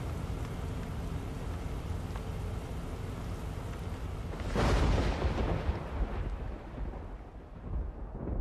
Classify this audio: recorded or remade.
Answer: recorded